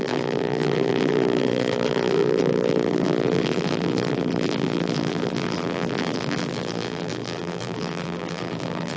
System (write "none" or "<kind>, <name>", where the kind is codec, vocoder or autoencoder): vocoder, BigVGAN v2